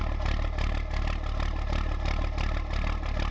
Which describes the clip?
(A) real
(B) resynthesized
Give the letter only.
A